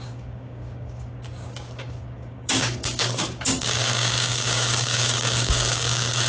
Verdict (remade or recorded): remade